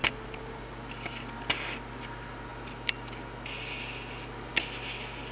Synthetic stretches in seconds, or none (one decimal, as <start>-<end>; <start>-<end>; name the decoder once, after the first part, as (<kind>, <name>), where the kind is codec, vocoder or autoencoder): none